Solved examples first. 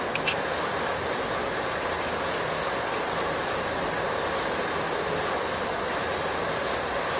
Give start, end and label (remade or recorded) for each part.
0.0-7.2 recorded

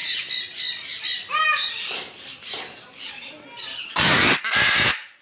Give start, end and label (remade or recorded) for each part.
0.0-3.7 recorded; 3.7-4.4 remade; 4.4-5.2 recorded

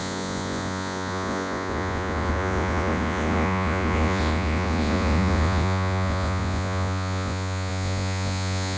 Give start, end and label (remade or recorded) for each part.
0.0-8.8 remade

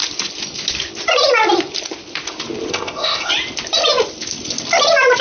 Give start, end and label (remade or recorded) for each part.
0.0-2.7 recorded; 2.7-3.3 remade; 3.3-5.2 recorded

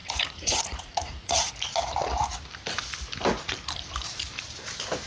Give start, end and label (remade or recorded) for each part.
0.0-1.5 remade; 1.5-5.1 recorded

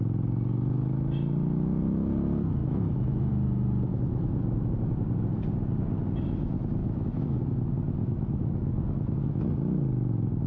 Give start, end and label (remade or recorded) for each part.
0.0-2.6 recorded; 2.6-3.3 remade; 3.3-3.9 recorded; 3.9-4.4 remade; 4.4-6.8 recorded; 6.8-7.4 remade; 7.4-8.0 recorded; 8.0-9.4 remade; 9.4-10.5 recorded

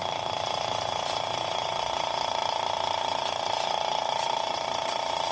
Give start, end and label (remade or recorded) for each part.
0.0-2.4 remade; 2.4-4.1 recorded; 4.1-5.3 remade

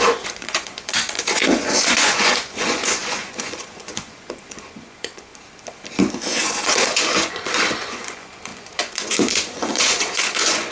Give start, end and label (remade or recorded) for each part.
0.0-5.3 remade; 5.3-6.1 recorded; 6.1-10.7 remade